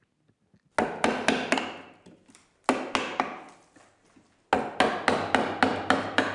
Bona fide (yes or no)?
yes